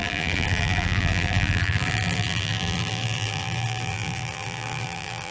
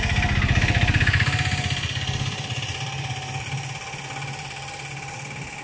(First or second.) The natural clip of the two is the second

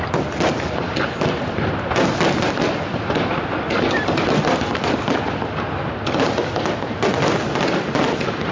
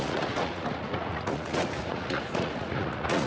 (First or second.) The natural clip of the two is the first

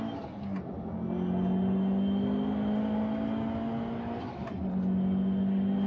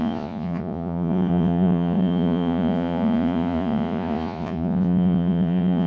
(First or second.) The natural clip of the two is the first